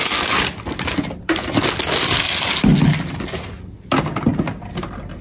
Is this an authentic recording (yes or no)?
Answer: yes